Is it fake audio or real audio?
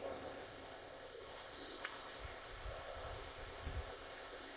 fake